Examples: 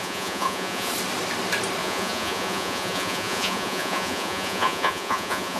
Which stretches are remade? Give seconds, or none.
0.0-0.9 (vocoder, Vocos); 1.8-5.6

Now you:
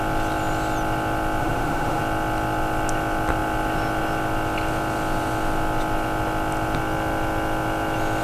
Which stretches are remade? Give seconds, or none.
1.4-2.0 (autoencoder, DAC-VAE)

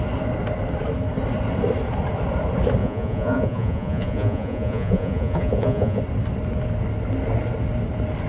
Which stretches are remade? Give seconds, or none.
2.8-6.0 (vocoder, Vocos)

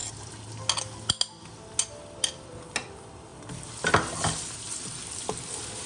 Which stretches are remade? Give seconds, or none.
none

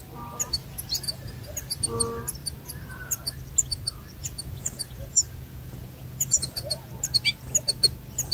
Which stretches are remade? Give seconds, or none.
4.2-6.9 (vocoder, Vocos)

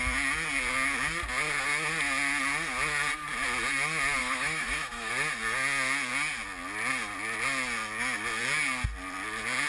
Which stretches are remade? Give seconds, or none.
4.2-5.1 (autoencoder, DAC-VAE)